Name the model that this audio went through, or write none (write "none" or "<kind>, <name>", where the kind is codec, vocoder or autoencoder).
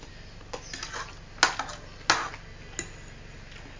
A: none